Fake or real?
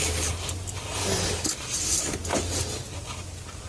real